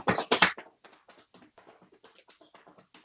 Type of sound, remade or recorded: recorded